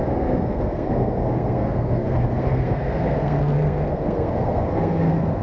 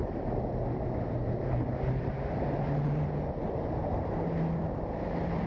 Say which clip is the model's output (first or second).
first